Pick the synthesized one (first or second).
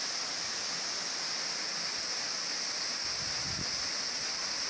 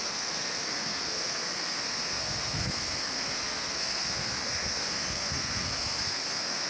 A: second